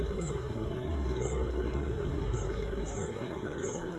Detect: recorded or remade remade